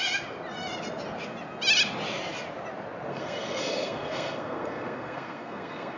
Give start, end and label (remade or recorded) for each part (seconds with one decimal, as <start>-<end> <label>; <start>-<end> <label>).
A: 0.0-3.1 recorded; 3.1-6.0 remade